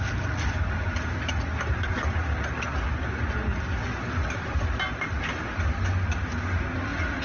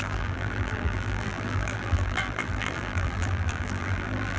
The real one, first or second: first